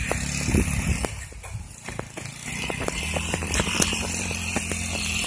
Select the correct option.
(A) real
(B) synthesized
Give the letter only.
A